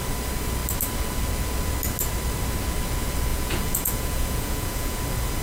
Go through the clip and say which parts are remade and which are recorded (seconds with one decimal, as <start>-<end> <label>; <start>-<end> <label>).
0.0-3.3 recorded; 3.3-5.0 remade; 5.0-5.4 recorded